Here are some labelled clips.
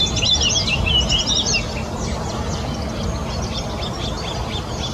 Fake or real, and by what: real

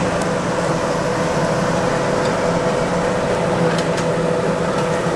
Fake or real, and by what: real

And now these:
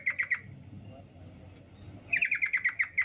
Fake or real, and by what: real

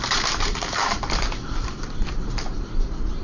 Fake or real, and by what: fake, vocoder, BigVGAN v2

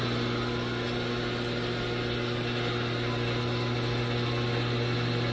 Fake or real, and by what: real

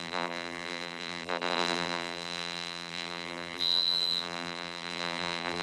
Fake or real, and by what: fake, vocoder, BigVGAN v2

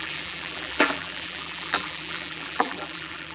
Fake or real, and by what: fake, vocoder, BigVGAN v2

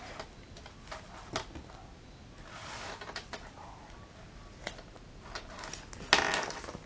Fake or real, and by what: real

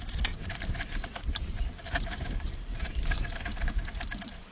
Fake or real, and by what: fake, vocoder, BigVGAN v2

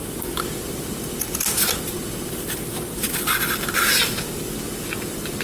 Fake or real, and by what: real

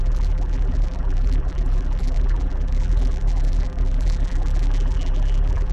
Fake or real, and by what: fake, vocoder, BigVGAN v2